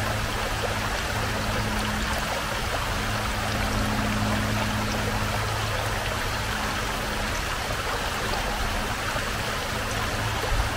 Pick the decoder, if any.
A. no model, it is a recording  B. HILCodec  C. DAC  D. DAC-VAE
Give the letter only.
A